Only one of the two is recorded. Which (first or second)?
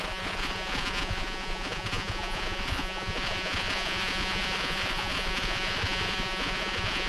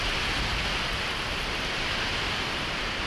second